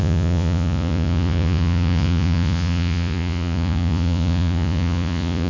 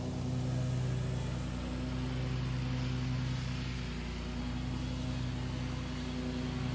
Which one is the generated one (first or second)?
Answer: first